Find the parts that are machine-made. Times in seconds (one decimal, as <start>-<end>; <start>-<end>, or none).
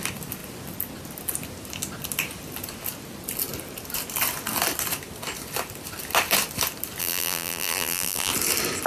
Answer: 7.0-8.3